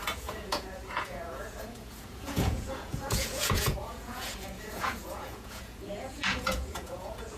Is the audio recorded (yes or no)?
no